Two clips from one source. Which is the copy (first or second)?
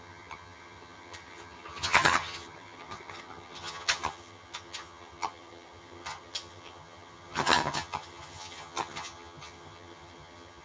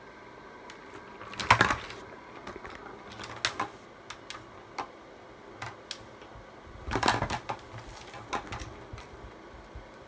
first